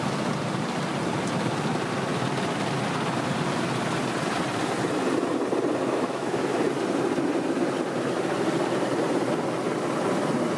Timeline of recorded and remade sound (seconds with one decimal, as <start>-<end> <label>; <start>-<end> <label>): 0.0-5.8 recorded; 5.8-6.4 remade; 6.4-10.6 recorded